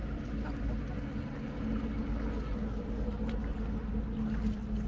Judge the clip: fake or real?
real